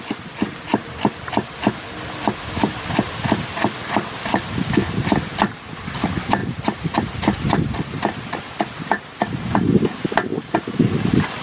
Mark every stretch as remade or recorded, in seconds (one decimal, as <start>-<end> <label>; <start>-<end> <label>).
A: 0.0-6.4 recorded; 6.4-7.6 remade; 7.6-11.4 recorded